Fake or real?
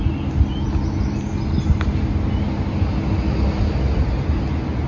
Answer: real